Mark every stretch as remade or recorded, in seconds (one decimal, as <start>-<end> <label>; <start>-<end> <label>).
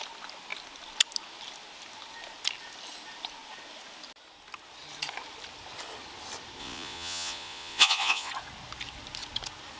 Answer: 0.0-6.6 recorded; 6.6-8.3 remade; 8.3-9.8 recorded